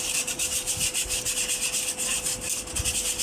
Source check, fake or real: real